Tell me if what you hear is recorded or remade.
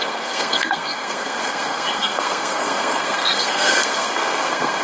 remade